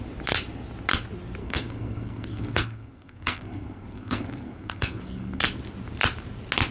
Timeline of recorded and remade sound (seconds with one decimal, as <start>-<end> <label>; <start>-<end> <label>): 0.0-1.4 recorded; 1.4-5.4 remade; 5.4-6.7 recorded